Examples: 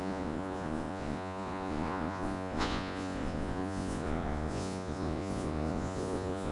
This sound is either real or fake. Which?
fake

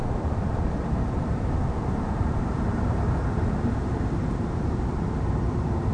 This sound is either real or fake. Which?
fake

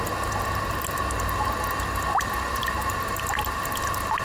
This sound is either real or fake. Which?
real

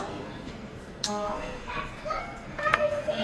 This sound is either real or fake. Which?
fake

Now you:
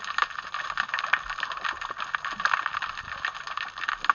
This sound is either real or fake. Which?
real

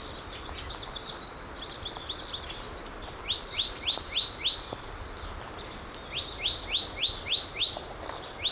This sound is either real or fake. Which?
real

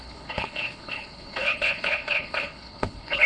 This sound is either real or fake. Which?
fake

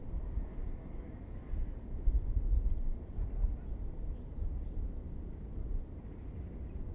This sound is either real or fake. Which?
real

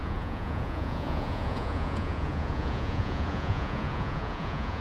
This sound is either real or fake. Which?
fake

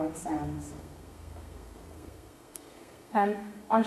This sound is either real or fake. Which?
fake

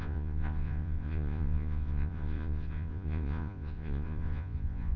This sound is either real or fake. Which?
fake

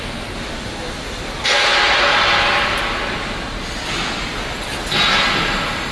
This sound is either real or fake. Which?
real